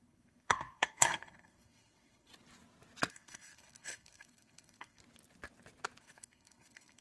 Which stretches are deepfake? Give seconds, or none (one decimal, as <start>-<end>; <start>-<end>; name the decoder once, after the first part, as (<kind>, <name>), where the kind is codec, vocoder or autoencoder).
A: 0.0-2.3 (codec, SNAC); 3.1-5.0; 6.0-7.0